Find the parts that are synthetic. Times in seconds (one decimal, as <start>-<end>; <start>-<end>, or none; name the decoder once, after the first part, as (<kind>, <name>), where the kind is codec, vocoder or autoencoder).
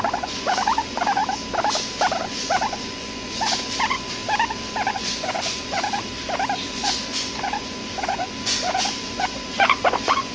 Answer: 0.0-1.2 (vocoder, Vocos); 2.2-4.2; 4.9-6.0; 6.6-10.3